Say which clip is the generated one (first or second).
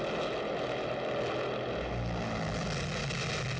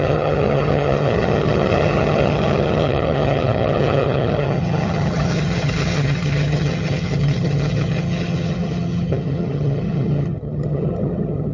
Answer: second